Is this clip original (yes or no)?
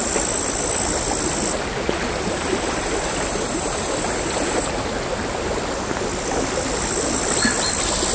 yes